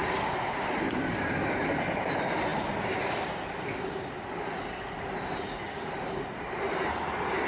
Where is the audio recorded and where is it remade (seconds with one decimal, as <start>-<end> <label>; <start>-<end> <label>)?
0.0-7.5 recorded